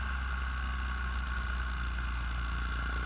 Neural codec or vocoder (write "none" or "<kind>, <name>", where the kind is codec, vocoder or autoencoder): none